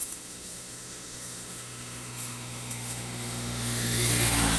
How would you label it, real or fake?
fake